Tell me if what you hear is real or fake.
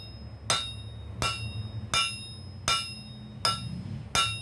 real